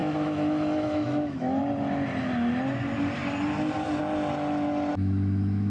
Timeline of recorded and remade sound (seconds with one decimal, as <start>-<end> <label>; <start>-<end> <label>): 0.0-1.6 remade; 1.6-4.9 recorded; 4.9-5.7 remade

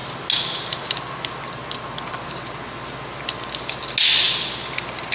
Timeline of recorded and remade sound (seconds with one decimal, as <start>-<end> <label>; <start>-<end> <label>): 0.0-5.1 recorded